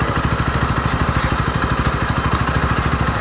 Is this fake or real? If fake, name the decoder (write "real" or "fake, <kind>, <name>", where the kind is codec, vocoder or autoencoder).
fake, vocoder, BigVGAN v2